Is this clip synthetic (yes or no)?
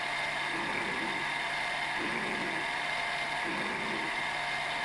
no